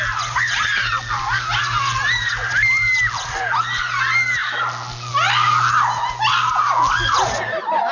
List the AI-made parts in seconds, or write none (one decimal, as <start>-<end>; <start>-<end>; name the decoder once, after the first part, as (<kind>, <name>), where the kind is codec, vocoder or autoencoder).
none